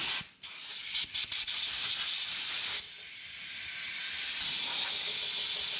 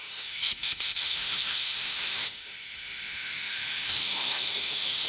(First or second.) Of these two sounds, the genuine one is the first